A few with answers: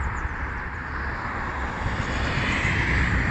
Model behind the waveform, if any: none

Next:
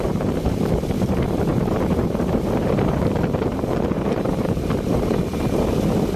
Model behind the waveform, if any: vocoder, BigVGAN v2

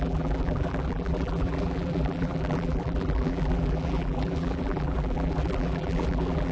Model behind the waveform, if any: vocoder, BigVGAN v2